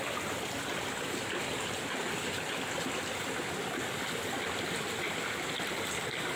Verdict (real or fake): real